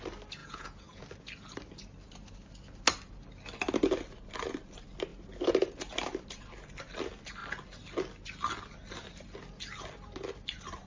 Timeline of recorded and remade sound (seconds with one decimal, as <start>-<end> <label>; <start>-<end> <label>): 0.0-0.4 recorded; 0.4-1.0 remade; 1.0-10.9 recorded